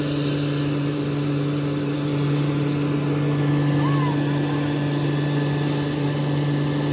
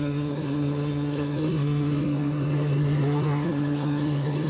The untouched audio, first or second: first